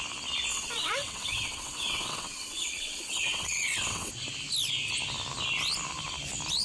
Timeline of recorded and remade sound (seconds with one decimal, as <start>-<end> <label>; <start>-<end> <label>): 0.0-0.5 recorded; 0.5-4.1 remade; 4.1-6.6 recorded